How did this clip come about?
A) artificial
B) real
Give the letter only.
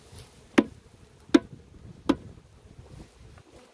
B